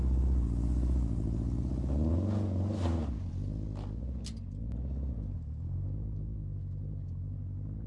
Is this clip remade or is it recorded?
recorded